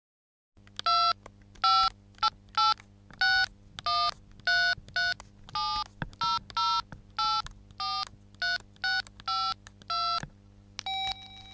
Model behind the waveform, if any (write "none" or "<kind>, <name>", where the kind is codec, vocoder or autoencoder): none